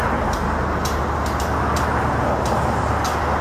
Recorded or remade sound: recorded